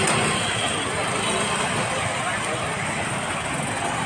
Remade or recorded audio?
recorded